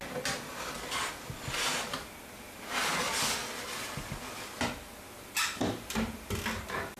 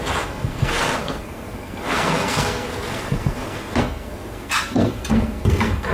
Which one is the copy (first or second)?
second